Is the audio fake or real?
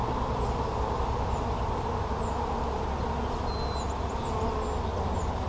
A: real